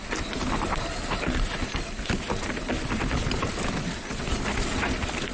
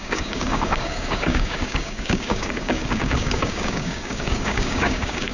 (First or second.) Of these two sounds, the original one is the first